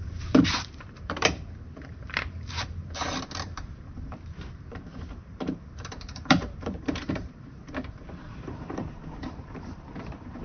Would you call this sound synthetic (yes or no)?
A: yes